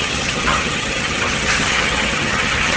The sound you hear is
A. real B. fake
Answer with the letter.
B